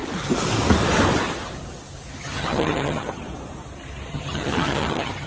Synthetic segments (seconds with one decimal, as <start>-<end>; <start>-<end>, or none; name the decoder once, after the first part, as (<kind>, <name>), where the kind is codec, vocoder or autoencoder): 2.2-3.2 (vocoder, HiFi-GAN); 4.1-5.3